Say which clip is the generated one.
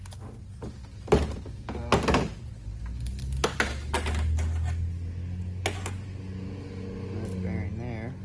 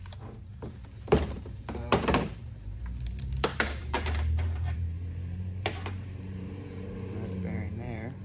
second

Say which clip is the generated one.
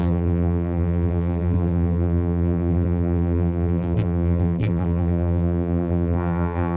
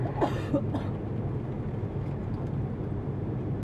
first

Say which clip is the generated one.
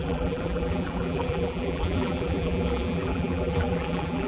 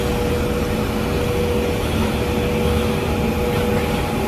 first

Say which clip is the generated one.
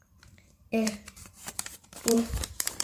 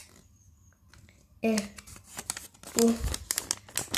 first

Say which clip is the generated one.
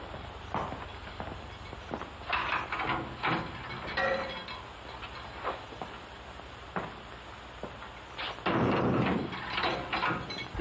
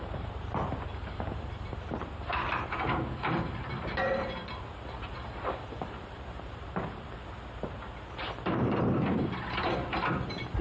second